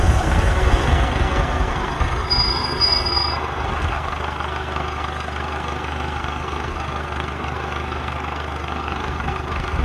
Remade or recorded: remade